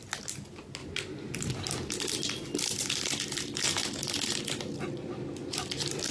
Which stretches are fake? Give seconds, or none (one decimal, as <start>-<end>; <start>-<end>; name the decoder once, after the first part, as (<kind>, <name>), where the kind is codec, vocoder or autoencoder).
none